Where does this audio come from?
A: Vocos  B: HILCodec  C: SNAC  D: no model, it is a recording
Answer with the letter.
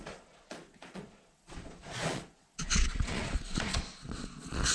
A